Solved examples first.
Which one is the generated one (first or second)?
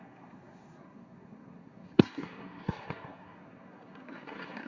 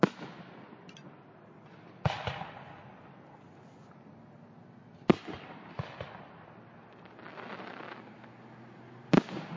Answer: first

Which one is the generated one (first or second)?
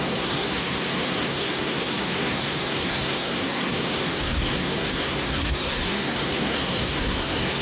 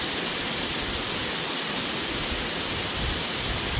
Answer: first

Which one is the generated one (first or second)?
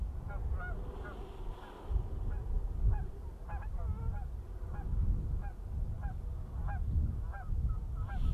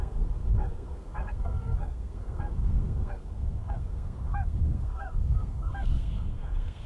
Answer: second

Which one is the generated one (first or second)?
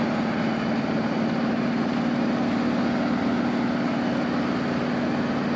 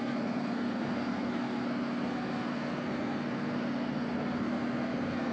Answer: second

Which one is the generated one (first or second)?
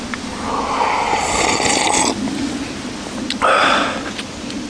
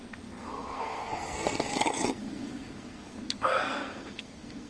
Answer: second